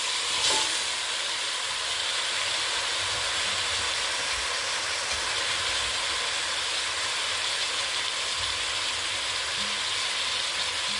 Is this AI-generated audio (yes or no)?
no